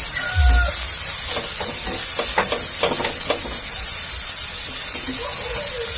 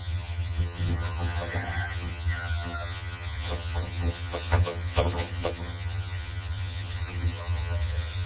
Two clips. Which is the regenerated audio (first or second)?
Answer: second